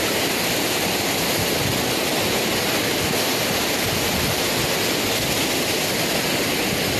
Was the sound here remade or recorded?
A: recorded